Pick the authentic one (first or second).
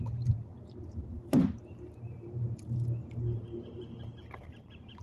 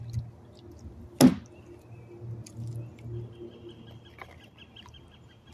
second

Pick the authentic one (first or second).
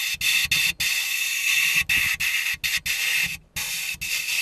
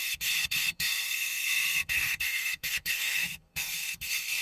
first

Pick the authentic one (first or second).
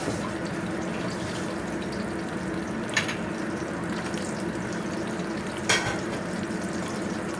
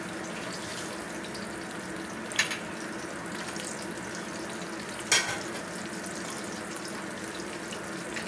second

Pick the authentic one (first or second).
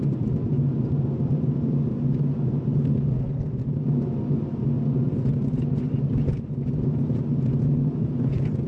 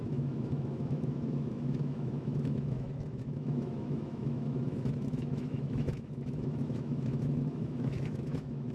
first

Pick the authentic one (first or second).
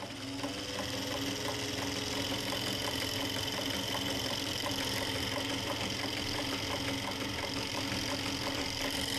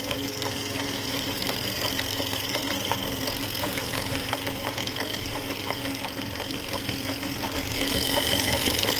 first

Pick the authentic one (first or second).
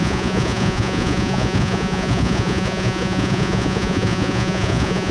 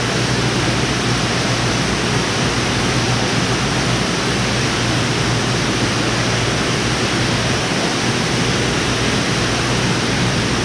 second